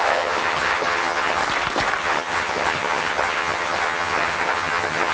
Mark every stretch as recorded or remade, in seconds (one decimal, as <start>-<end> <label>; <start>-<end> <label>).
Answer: 0.0-1.4 remade; 1.4-2.0 recorded; 2.0-5.1 remade